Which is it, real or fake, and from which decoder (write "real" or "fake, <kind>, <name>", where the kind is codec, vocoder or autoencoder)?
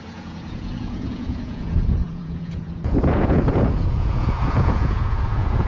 fake, vocoder, Vocos